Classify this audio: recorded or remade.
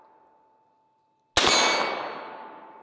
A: recorded